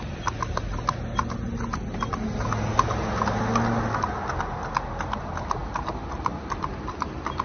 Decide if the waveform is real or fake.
real